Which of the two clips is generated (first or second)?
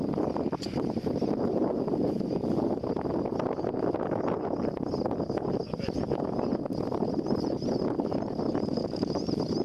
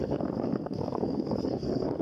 second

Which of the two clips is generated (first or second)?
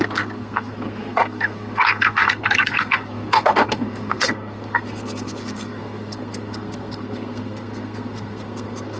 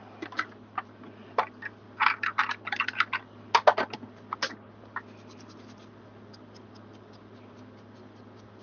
first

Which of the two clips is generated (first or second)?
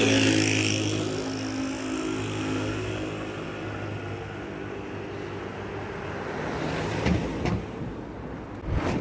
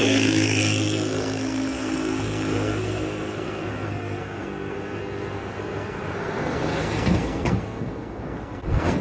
second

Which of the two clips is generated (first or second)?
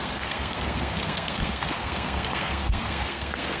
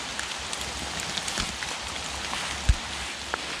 first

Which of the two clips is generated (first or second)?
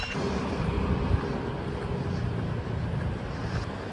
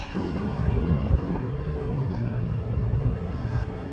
second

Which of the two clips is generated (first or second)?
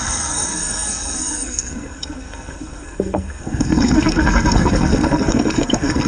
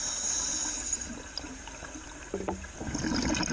first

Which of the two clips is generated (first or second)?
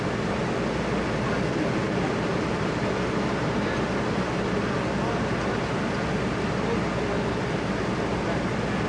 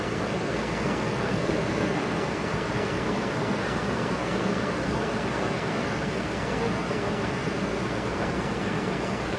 second